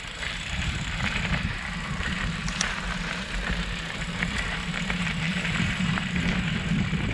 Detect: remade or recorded remade